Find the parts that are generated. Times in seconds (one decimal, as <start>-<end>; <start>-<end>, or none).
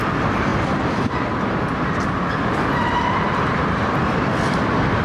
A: none